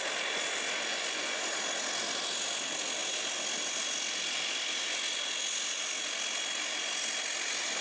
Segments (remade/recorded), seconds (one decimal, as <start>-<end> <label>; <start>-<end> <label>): 0.0-0.9 recorded; 0.9-1.4 remade; 1.4-7.8 recorded